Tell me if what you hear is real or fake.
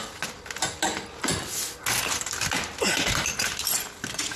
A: real